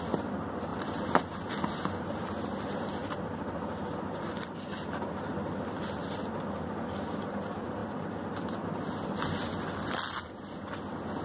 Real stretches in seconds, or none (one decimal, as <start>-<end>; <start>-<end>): 0.0-0.7; 1.5-3.0; 6.8-11.2

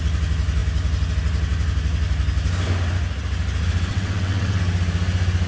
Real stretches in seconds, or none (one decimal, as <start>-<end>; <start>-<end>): 0.0-3.9; 4.6-5.5

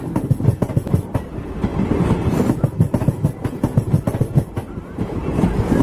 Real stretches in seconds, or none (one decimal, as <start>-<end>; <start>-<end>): 0.0-5.8

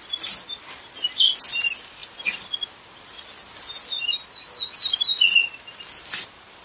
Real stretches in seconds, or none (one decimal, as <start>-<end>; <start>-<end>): 0.0-6.6

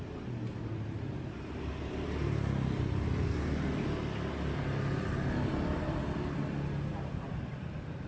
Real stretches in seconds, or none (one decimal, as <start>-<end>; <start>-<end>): 0.0-8.1

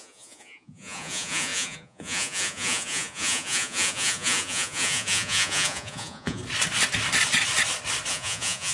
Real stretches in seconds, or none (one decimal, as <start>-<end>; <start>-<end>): 6.4-8.1

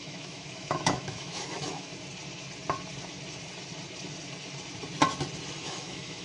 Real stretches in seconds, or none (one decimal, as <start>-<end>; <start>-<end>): 1.9-5.6

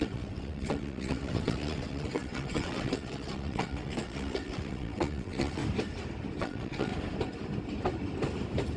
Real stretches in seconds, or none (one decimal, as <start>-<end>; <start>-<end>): 5.6-6.4; 6.9-8.8